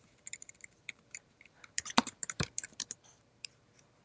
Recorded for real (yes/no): no